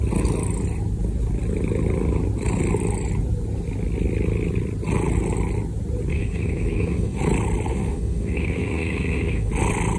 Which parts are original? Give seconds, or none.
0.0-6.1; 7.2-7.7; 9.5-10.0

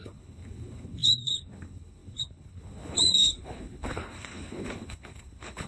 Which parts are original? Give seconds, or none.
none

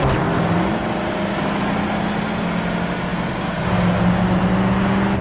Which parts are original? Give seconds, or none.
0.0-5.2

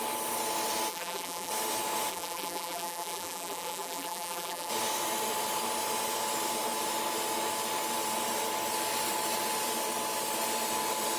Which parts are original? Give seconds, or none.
0.0-0.9; 1.5-2.1; 4.7-11.2

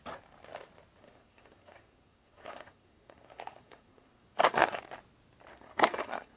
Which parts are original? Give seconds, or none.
0.0-1.0; 4.8-5.5

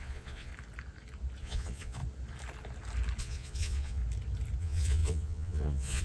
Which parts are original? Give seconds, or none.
0.5-1.4; 2.0-3.2; 4.0-4.6

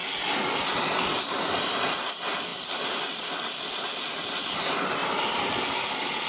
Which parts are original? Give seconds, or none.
0.0-6.3

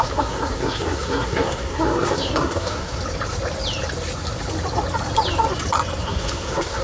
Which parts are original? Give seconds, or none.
3.0-6.0